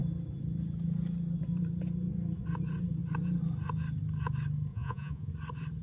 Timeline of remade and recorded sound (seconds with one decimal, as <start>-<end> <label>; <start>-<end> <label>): 0.0-4.7 recorded; 4.7-5.3 remade; 5.3-5.8 recorded